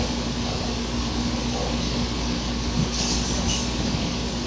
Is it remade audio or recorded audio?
remade